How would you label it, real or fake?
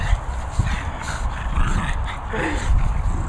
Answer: real